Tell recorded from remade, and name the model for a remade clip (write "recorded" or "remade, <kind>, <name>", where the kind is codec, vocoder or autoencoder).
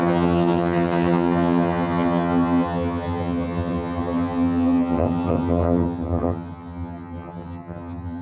remade, vocoder, HiFi-GAN